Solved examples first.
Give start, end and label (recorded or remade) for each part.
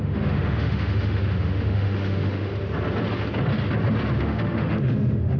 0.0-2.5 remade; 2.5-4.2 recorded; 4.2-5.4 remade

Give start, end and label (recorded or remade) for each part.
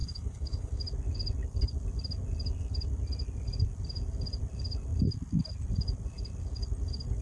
0.0-0.8 remade; 0.8-7.2 recorded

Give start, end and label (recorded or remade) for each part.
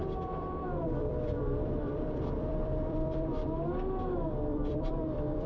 0.0-3.3 remade; 3.3-4.3 recorded; 4.3-5.5 remade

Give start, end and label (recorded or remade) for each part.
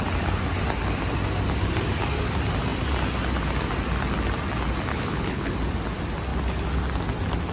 0.0-4.9 recorded; 4.9-5.5 remade; 5.5-7.5 recorded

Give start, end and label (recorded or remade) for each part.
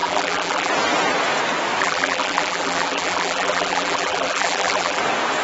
0.0-0.7 remade; 0.7-1.8 recorded; 1.8-5.0 remade; 5.0-5.4 recorded